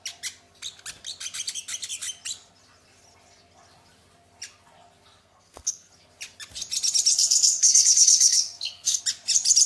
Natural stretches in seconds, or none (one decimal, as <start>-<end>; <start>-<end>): 0.0-5.2; 5.9-7.1; 9.0-9.7